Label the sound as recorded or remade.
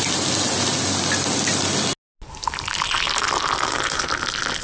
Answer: recorded